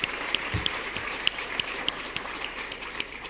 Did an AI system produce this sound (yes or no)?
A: yes